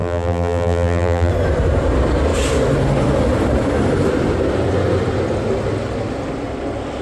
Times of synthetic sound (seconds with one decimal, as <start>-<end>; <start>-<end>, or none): 0.0-1.3